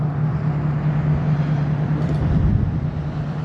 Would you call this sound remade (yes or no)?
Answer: no